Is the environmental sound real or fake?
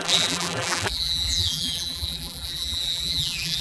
fake